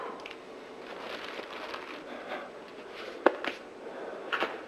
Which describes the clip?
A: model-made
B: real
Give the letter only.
B